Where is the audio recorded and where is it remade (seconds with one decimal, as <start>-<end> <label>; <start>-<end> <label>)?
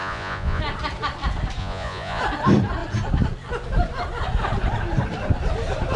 0.0-0.6 remade; 0.6-1.6 recorded; 1.6-2.2 remade; 2.2-6.0 recorded